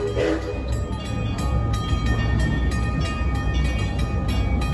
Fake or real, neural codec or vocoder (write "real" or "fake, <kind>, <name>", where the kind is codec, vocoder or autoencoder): real